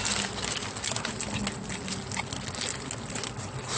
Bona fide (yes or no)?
yes